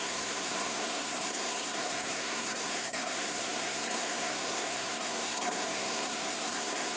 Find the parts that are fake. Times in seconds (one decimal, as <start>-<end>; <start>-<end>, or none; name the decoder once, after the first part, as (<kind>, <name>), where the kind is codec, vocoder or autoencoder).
0.0-7.0 (codec, SNAC)